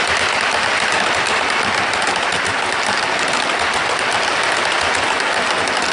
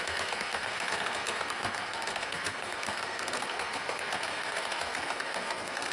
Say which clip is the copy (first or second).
second